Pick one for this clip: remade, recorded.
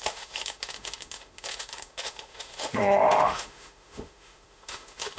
remade